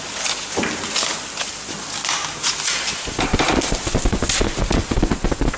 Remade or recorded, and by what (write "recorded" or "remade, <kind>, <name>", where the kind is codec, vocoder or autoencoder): recorded